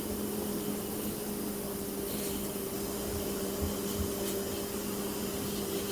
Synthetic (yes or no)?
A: no